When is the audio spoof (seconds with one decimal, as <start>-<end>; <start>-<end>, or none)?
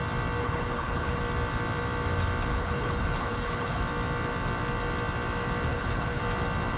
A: 0.4-1.2; 2.5-3.8; 5.7-6.2